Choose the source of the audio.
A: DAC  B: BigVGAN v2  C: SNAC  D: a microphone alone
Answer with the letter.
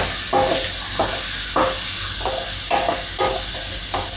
D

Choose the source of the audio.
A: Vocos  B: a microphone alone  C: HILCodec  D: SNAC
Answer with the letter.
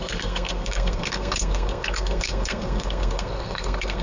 D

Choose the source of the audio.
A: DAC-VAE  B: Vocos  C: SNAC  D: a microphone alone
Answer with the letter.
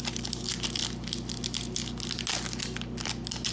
D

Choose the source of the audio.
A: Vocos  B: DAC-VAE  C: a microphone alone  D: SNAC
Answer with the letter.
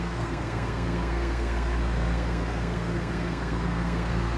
D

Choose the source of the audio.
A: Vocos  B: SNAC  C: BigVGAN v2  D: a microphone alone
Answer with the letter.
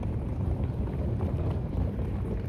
C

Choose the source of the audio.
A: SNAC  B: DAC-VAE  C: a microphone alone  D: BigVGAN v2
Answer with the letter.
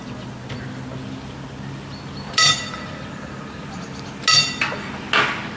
C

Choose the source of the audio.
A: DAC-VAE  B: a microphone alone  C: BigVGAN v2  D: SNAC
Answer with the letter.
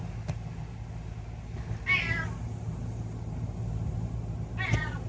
B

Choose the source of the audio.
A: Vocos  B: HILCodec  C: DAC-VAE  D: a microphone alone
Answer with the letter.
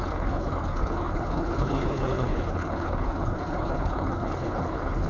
B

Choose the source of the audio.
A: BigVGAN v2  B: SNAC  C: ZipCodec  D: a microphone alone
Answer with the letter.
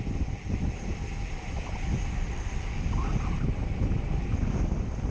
D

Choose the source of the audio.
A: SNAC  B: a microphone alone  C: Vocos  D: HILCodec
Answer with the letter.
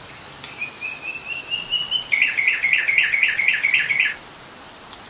B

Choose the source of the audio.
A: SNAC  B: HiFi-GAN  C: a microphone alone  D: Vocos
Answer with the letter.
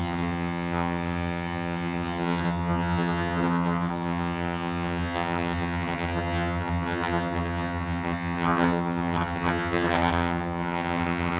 B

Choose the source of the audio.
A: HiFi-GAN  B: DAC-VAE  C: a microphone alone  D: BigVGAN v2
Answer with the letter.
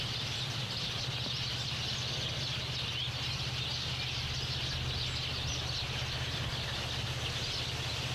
C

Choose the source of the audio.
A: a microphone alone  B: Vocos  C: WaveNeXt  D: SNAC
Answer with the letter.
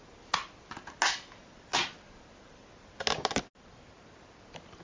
A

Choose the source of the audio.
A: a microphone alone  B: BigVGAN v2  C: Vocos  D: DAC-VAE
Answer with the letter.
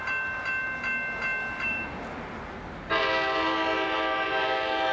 A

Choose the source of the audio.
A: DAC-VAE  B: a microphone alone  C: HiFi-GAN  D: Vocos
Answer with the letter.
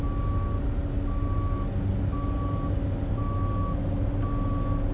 B